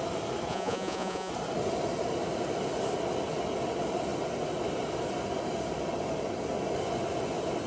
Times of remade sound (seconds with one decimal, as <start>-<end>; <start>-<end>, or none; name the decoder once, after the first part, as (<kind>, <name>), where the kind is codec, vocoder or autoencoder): 0.5-1.3 (vocoder, Vocos)